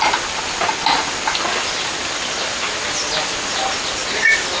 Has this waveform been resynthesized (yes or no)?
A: no